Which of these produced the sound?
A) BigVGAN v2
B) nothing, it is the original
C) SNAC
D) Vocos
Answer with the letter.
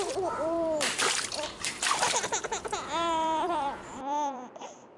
A